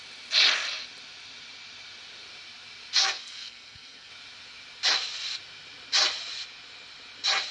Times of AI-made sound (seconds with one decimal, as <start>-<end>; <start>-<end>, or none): 3.0-4.1